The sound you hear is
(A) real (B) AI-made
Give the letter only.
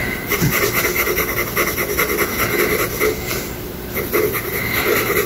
A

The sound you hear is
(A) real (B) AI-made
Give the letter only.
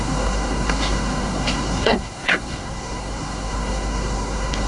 B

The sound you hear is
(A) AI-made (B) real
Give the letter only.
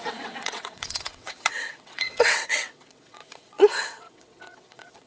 A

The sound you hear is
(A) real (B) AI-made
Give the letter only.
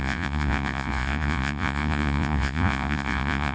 B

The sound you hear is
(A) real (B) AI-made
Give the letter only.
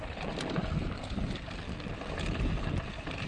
B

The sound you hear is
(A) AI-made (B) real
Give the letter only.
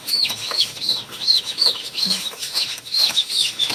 A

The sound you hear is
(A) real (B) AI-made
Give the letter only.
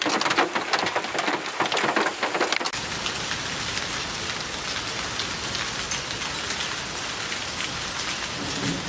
A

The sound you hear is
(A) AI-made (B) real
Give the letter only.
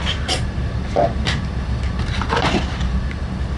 B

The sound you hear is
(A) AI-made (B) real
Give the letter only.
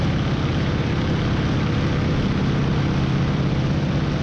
B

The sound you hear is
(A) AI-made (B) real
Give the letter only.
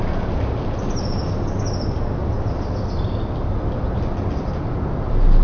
B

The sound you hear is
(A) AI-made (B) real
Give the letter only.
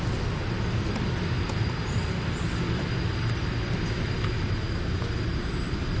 B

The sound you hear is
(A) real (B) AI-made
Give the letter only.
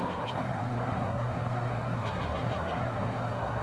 B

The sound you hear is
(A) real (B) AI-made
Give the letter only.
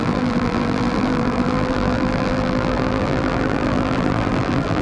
B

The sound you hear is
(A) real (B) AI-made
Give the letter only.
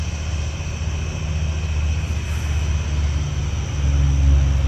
A